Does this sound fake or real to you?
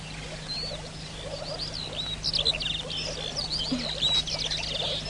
real